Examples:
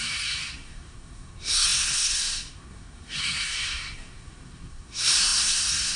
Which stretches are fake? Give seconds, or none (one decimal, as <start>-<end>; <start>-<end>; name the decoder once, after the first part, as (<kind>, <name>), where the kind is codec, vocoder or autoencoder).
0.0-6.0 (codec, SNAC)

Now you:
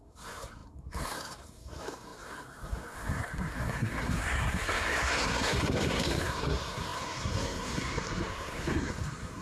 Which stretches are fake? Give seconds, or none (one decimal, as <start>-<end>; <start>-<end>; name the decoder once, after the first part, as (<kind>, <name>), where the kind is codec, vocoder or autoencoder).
0.0-9.4 (codec, SNAC)

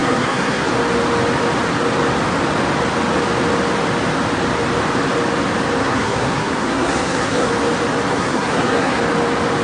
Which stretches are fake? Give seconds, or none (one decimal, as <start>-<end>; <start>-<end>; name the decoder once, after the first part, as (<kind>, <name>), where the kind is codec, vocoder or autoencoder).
0.0-0.7 (codec, SNAC); 5.8-7.5; 8.1-9.0

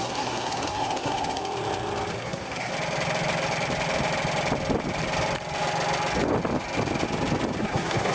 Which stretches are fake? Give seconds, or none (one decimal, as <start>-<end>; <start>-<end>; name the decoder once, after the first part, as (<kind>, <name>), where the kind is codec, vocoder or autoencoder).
0.0-1.4 (codec, SNAC); 2.2-2.7; 7.6-8.1

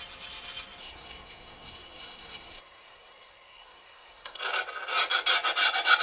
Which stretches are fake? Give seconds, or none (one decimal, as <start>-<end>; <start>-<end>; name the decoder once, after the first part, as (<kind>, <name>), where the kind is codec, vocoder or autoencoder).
0.8-4.4 (codec, SNAC)

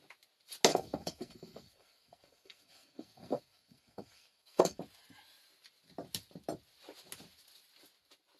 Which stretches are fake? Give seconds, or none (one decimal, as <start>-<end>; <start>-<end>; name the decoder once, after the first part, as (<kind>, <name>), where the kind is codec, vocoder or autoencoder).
0.7-4.8 (codec, SNAC)